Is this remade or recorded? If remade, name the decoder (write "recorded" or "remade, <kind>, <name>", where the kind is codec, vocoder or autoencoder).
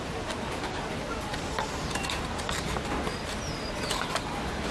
recorded